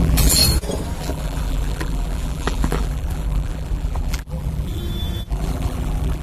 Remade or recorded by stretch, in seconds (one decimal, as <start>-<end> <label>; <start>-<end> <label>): 0.0-0.4 remade; 0.4-1.0 recorded; 1.0-4.8 remade; 4.8-5.3 recorded; 5.3-6.2 remade